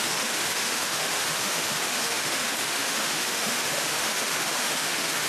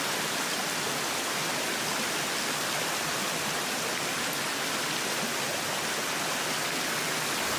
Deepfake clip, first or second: first